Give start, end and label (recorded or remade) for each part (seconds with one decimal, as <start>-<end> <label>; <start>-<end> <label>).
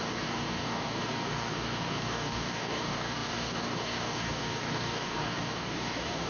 0.0-6.3 remade